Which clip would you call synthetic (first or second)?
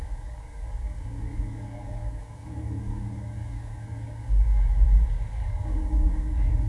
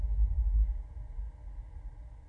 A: first